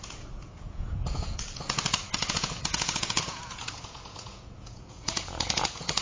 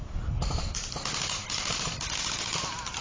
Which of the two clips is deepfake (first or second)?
first